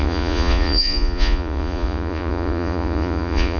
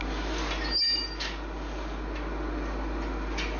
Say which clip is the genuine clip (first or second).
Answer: second